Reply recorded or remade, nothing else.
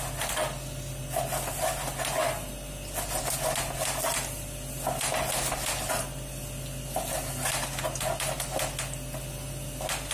recorded